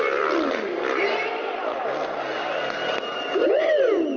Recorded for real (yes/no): yes